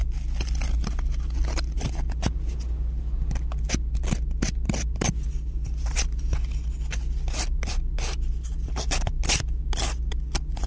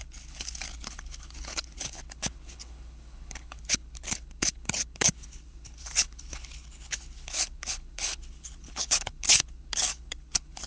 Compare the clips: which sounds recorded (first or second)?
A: first